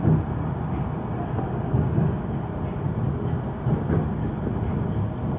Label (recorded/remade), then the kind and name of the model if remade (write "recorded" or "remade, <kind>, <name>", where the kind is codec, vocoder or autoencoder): recorded